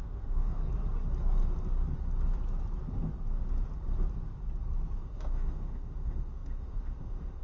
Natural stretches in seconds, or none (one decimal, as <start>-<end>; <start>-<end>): 0.6-5.0